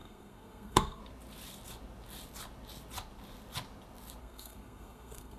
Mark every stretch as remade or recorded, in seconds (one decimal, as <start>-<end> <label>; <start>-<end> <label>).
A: 0.0-1.0 remade; 1.0-4.2 recorded; 4.2-5.4 remade